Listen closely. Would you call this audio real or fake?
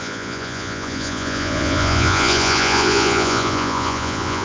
fake